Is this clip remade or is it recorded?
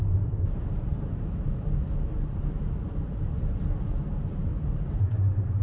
recorded